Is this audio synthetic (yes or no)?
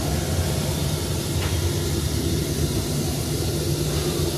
no